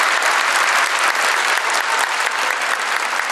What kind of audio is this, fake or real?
real